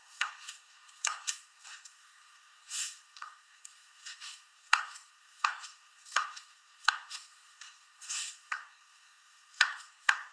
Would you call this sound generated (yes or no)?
yes